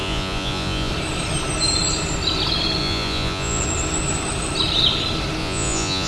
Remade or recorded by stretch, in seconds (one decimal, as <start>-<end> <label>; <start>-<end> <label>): 0.0-0.9 remade; 0.9-2.8 recorded; 2.8-3.6 remade; 3.6-5.4 recorded; 5.4-6.1 remade